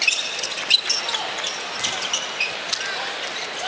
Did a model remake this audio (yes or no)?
no